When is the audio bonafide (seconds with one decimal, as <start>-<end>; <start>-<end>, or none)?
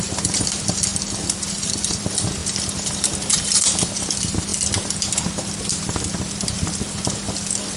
none